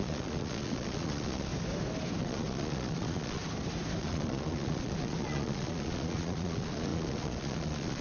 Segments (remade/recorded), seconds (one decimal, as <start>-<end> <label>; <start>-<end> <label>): 0.0-1.5 remade; 1.5-2.2 recorded; 2.2-3.4 remade; 3.4-4.0 recorded; 4.0-8.0 remade